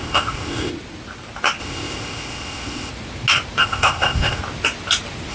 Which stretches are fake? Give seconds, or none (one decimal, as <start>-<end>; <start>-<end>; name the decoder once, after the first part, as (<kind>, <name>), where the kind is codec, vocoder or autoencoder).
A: 0.0-0.7 (codec, ZipCodec); 1.6-2.9; 3.6-4.4